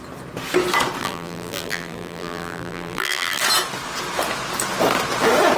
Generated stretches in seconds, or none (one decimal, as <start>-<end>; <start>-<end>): 1.0-3.4